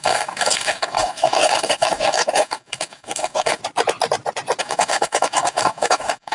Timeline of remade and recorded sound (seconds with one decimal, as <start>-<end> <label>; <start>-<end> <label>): 0.0-3.6 remade; 3.6-4.6 recorded; 4.6-6.3 remade